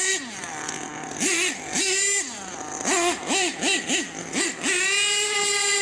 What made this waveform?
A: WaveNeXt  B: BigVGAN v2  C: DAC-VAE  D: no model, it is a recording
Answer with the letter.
D